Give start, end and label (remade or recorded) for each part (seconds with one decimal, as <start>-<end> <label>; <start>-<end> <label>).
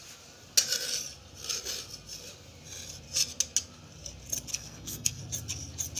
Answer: 0.0-4.5 recorded; 4.5-5.2 remade; 5.2-6.0 recorded